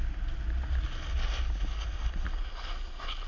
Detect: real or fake real